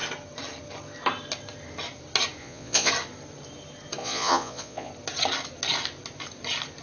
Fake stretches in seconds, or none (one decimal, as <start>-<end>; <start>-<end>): 2.4-2.9; 4.0-4.9